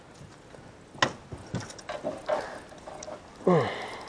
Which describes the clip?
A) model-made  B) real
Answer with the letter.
B